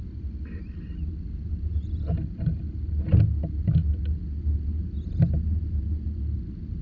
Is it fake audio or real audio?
real